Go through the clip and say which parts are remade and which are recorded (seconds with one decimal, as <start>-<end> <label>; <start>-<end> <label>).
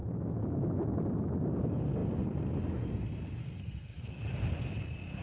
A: 0.0-3.4 recorded; 3.4-4.3 remade; 4.3-5.2 recorded